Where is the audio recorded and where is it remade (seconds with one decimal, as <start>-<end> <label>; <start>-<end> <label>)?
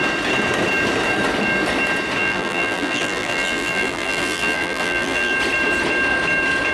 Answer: 0.0-2.2 recorded; 2.2-5.3 remade; 5.3-6.7 recorded